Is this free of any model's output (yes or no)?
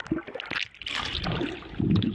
yes